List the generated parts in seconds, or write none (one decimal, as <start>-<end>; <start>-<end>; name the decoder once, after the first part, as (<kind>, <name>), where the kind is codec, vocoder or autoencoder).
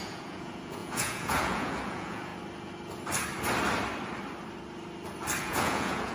0.0-2.3 (vocoder, Vocos); 5.4-6.1